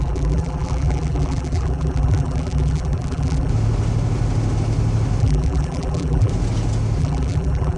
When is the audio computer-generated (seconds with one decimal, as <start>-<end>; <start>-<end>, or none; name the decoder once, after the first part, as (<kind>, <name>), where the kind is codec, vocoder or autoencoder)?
0.0-3.5 (vocoder, BigVGAN v2); 5.2-6.3; 7.0-7.8